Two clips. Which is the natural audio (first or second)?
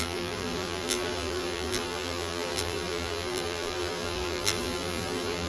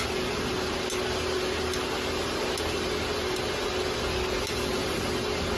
second